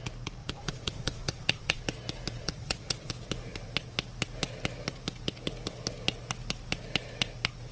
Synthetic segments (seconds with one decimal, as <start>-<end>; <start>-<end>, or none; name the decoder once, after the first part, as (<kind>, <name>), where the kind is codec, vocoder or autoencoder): 0.4-1.8 (vocoder, Vocos); 2.4-3.1